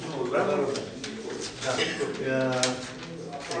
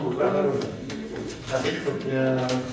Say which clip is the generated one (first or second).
second